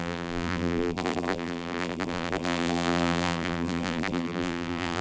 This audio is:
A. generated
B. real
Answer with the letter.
A